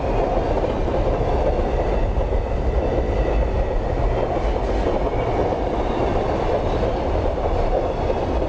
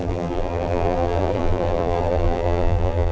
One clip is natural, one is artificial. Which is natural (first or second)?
first